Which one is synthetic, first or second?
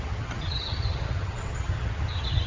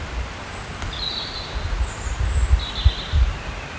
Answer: first